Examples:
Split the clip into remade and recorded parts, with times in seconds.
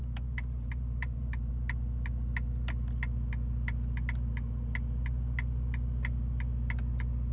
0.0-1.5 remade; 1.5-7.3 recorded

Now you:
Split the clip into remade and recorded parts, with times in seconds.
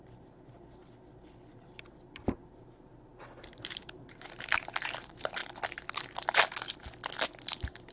0.0-0.8 remade; 0.8-1.5 recorded; 1.5-5.4 remade; 5.4-7.5 recorded; 7.5-7.9 remade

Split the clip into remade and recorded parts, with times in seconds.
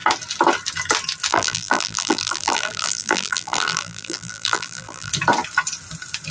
0.0-1.3 recorded; 1.3-5.1 remade; 5.1-6.3 recorded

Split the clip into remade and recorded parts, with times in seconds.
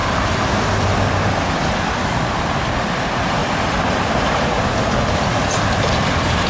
0.0-1.8 recorded; 1.8-6.5 remade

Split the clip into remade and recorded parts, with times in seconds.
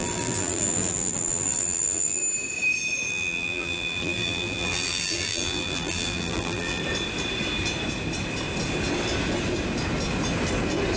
0.0-2.2 remade; 2.2-3.1 recorded; 3.1-6.8 remade; 6.8-11.0 recorded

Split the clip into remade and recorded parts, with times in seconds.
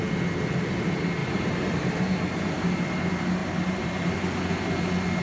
0.0-1.2 recorded; 1.2-2.1 remade; 2.1-3.4 recorded; 3.4-4.1 remade; 4.1-5.2 recorded